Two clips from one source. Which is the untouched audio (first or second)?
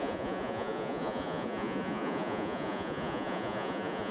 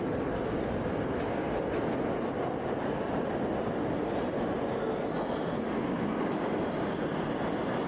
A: second